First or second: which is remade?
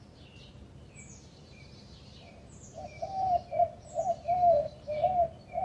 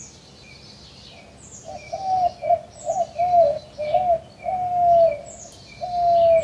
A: first